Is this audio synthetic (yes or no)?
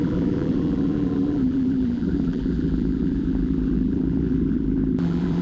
yes